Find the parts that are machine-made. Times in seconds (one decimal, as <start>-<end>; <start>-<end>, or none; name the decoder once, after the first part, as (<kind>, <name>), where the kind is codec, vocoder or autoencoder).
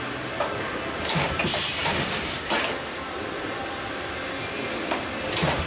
0.0-5.7 (vocoder, BigVGAN v2)